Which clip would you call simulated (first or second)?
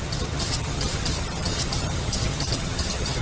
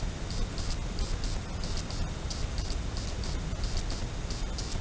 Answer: first